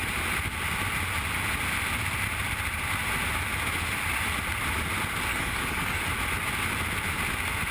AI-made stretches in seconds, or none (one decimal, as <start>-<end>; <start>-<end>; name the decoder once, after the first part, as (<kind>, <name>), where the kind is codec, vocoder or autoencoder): 5.3-6.0 (codec, DAC)